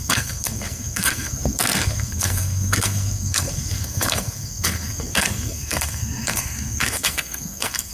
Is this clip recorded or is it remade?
remade